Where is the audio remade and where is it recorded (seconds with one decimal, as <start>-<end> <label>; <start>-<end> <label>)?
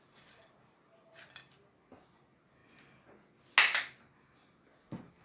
0.0-5.2 recorded